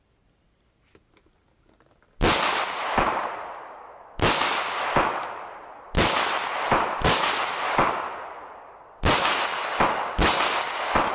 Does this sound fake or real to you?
real